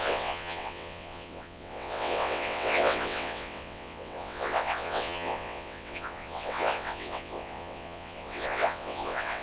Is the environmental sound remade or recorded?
remade